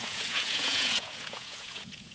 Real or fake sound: fake